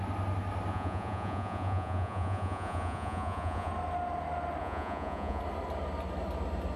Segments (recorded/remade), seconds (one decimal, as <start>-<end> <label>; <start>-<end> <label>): 0.0-0.7 recorded; 0.7-3.7 remade; 3.7-4.6 recorded; 4.6-5.4 remade; 5.4-6.8 recorded